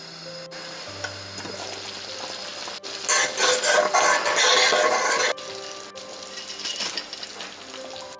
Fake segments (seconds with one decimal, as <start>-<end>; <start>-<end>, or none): none